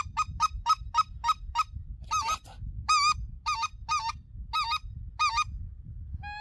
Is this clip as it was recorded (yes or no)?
yes